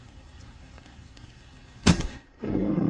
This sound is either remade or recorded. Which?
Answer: remade